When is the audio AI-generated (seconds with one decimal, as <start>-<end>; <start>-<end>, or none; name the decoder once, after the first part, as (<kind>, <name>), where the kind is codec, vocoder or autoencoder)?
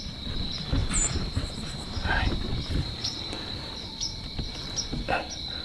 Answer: 0.8-3.3 (vocoder, BigVGAN v2); 4.5-5.0